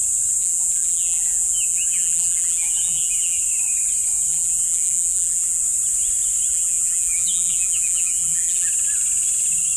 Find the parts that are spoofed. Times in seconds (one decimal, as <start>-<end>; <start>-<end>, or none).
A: 0.4-3.4; 4.3-5.6; 6.5-8.7